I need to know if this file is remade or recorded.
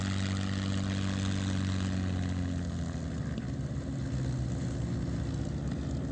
recorded